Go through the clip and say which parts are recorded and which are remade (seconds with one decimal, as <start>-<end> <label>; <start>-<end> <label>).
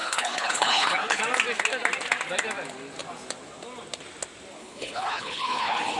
0.0-1.2 remade; 1.2-4.6 recorded; 4.6-6.0 remade